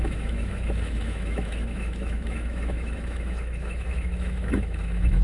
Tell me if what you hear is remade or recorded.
remade